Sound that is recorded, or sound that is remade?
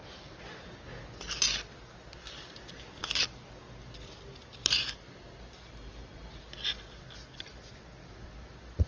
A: recorded